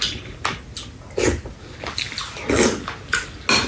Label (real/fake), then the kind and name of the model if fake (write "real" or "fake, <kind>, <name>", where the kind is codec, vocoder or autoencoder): real